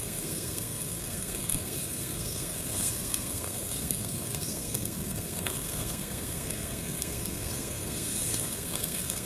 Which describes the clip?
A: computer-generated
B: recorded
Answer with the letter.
A